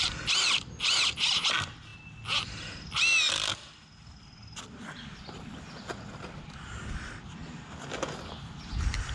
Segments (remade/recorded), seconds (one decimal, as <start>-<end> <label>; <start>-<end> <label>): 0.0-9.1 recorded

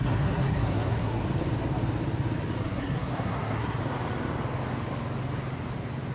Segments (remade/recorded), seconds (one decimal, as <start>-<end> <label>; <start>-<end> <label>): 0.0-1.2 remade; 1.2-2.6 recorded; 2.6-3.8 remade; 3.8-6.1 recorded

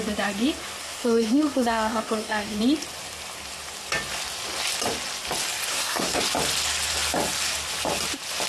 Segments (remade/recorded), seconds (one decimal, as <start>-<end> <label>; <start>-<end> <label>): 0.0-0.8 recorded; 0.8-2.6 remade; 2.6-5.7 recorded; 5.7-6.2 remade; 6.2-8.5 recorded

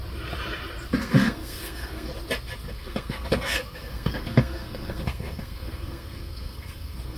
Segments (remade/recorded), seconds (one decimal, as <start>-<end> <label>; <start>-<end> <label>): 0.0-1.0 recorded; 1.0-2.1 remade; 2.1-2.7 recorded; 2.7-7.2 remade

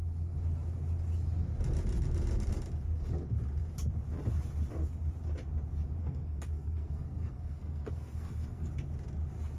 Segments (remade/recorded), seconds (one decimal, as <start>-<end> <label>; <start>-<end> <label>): 0.0-6.0 recorded; 6.0-8.7 remade; 8.7-9.6 recorded